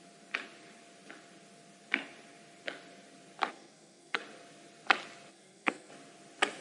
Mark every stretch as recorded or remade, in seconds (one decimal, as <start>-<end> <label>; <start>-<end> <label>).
0.0-3.5 recorded; 3.5-4.2 remade; 4.2-5.3 recorded; 5.3-5.9 remade; 5.9-6.6 recorded